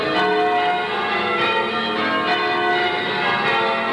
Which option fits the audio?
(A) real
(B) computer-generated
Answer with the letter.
A